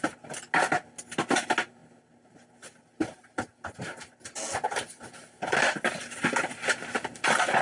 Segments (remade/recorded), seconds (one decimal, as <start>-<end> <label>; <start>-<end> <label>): 0.0-7.6 recorded